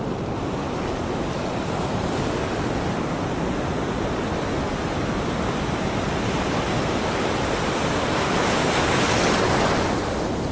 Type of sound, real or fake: real